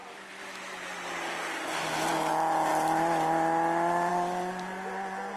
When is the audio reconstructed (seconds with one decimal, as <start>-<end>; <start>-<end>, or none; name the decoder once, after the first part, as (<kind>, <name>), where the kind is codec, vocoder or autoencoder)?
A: none